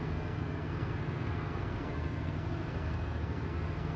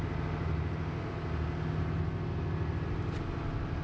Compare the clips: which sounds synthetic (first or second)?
first